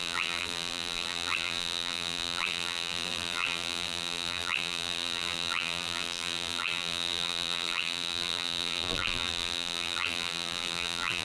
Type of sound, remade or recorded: remade